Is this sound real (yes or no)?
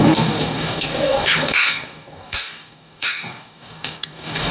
no